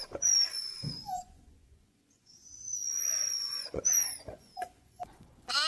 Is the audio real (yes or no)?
no